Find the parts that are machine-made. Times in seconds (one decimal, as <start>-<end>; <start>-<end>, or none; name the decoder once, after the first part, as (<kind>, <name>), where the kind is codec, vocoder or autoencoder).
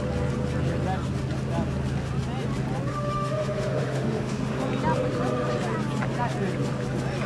2.9-4.6 (autoencoder, DAC-VAE)